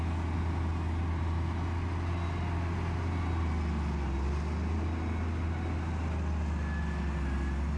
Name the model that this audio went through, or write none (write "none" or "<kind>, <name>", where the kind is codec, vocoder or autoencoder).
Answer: none